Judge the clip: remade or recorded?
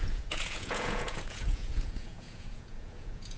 remade